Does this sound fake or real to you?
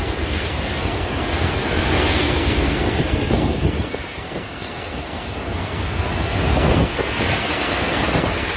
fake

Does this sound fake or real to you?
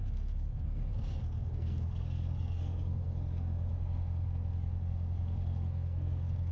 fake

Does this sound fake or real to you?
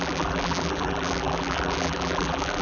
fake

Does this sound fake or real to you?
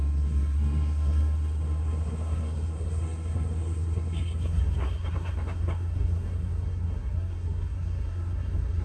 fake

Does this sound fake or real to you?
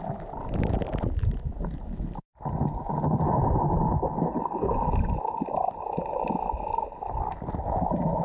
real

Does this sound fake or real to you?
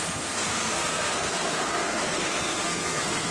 fake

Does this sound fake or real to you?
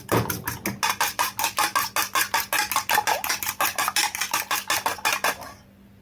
real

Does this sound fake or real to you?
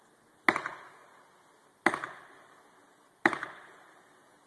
real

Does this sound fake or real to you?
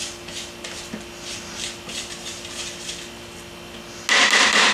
real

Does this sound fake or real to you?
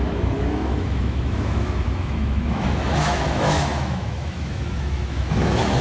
fake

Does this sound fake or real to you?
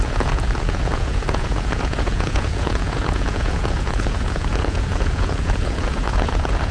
fake